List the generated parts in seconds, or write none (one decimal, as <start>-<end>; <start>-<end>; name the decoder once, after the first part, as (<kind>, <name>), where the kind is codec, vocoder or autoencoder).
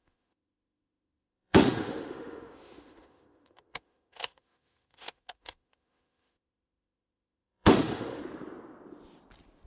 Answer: 0.0-8.2 (autoencoder, DAC-VAE)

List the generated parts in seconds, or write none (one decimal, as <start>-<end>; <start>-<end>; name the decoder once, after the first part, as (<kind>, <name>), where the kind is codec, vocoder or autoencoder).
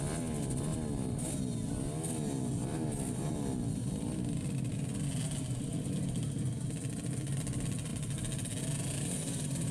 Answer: none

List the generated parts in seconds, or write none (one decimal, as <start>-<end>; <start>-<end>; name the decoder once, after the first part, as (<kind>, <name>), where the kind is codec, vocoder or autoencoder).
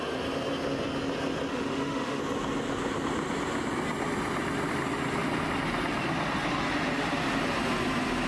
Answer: 1.5-2.2 (autoencoder, DAC-VAE)